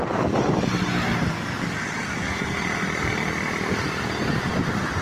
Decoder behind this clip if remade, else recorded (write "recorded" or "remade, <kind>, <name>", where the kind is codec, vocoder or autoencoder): recorded